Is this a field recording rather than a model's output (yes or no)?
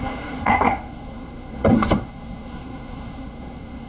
no